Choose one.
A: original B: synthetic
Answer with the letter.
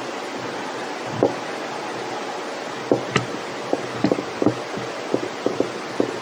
A